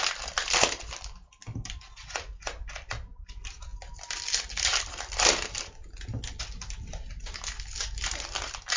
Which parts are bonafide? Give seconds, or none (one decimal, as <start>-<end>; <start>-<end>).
0.0-8.8